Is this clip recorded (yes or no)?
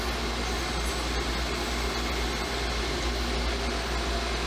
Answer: yes